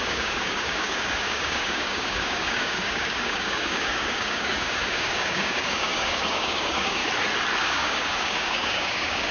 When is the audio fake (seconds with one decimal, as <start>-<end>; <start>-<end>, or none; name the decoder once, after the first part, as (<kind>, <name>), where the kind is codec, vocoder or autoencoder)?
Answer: 0.0-7.0 (codec, DAC); 7.6-9.3